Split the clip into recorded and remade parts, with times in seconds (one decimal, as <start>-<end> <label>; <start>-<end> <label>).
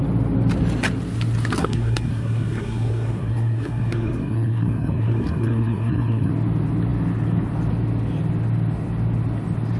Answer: 0.0-1.6 recorded; 1.6-6.3 remade; 6.3-9.8 recorded